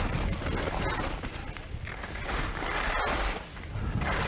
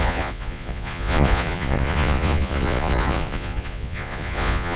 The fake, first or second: second